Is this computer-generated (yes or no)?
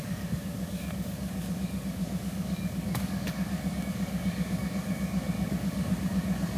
yes